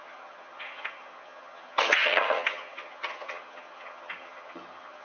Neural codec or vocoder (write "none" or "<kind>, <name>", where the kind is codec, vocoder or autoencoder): vocoder, HiFi-GAN